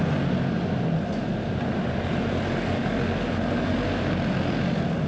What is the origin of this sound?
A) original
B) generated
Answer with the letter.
A